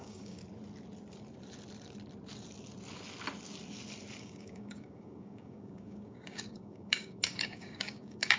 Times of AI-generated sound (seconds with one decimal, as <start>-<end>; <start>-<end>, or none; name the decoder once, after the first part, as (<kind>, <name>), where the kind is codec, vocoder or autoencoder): 0.0-0.4 (codec, DAC); 4.2-8.4